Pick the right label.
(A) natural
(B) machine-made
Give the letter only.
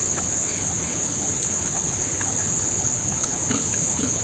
B